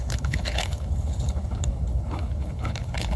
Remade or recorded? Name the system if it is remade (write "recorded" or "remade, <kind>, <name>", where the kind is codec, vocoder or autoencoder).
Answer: remade, codec, HILCodec